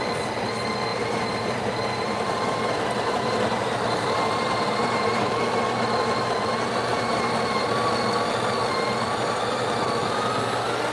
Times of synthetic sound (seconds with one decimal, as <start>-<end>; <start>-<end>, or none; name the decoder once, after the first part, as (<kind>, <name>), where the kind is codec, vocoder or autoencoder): 0.9-5.3 (vocoder, BigVGAN v2); 6.9-7.7